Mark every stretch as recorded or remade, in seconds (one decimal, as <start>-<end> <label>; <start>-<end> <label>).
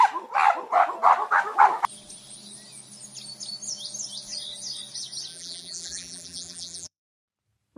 0.0-5.3 recorded; 5.3-7.0 remade; 7.0-7.8 recorded